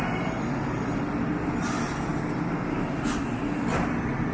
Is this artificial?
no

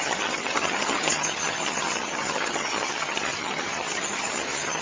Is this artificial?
yes